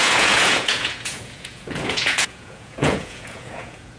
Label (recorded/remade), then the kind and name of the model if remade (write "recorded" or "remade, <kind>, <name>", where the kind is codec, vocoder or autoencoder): remade, vocoder, Vocos